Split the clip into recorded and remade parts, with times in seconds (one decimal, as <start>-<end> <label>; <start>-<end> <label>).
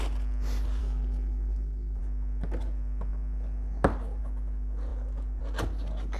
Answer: 0.0-0.8 recorded; 0.8-2.0 remade; 2.0-6.2 recorded